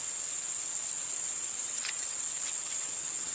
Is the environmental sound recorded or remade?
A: remade